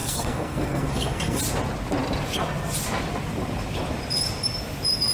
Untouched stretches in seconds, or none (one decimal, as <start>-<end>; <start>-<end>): 1.4-5.1